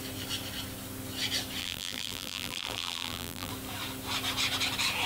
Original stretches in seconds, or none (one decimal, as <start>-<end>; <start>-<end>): 0.0-1.6; 3.5-5.1